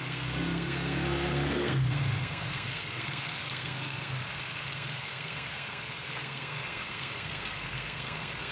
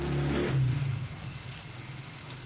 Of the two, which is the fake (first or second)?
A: first